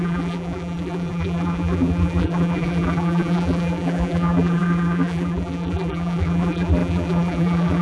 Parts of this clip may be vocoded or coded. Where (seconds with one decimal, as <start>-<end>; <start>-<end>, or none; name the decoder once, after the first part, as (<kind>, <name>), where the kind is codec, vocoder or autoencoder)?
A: 0.0-7.8 (vocoder, BigVGAN v2)